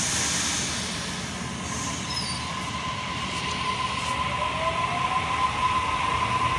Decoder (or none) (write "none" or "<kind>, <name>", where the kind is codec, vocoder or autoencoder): none